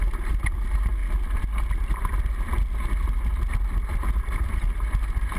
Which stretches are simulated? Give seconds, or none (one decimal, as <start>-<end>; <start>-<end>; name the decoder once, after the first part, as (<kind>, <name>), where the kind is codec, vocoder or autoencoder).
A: 0.0-1.0 (vocoder, BigVGAN v2); 4.2-5.4